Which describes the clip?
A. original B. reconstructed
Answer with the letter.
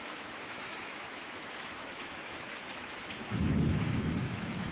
B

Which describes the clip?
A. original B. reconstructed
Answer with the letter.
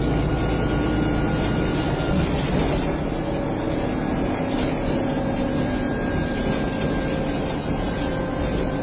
A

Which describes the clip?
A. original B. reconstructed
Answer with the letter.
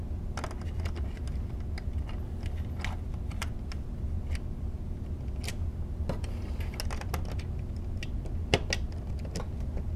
A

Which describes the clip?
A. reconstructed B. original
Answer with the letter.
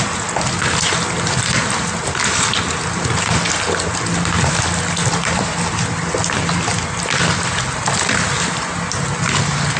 B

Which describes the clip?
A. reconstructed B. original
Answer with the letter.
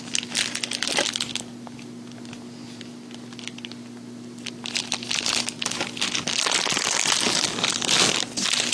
B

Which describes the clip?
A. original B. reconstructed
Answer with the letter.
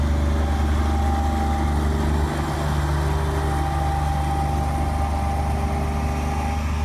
A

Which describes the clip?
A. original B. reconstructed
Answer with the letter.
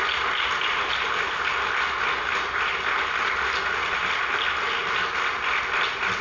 A